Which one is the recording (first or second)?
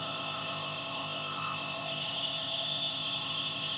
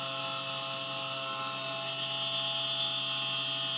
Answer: second